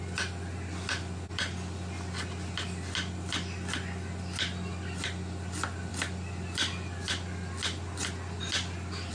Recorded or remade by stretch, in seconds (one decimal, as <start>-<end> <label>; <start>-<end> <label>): 0.0-9.1 recorded